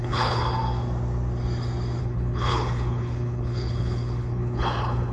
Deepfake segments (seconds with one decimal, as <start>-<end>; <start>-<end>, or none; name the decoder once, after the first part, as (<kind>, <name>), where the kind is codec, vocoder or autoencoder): 0.0-0.4 (codec, HILCodec); 2.0-5.1